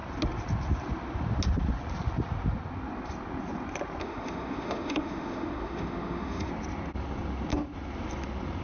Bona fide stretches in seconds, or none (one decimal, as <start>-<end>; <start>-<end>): 0.0-4.0; 6.5-8.6